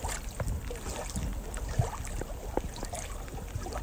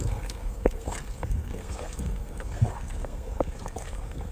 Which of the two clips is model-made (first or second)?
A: second